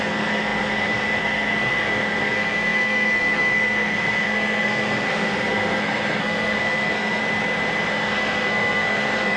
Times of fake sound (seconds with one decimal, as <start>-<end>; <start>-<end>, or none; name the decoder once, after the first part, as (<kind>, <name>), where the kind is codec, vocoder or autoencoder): 0.0-7.2 (codec, SNAC); 7.9-9.4